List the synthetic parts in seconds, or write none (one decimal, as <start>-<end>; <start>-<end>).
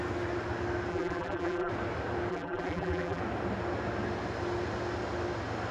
0.9-1.7; 2.3-3.2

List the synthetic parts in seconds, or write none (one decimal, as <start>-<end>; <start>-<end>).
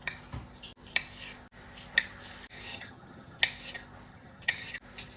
2.7-3.4; 4.1-4.7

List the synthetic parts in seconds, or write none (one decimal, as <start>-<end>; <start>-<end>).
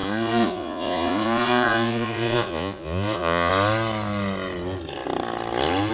0.0-3.5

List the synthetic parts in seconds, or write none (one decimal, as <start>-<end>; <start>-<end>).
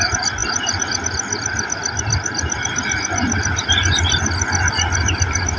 0.4-1.0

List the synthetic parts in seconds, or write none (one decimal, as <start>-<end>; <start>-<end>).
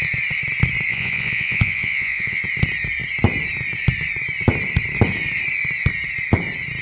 0.9-2.4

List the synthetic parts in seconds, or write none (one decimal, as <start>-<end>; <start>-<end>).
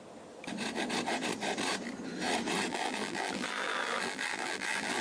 2.7-5.0